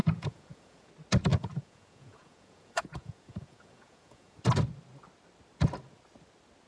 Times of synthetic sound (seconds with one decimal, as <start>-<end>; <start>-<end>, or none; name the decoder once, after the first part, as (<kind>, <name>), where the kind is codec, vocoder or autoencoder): 0.0-0.9 (vocoder, Vocos); 1.3-4.4